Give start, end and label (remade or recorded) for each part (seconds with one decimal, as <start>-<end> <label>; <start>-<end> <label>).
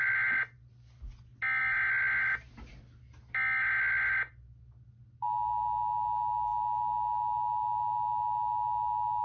0.0-9.2 recorded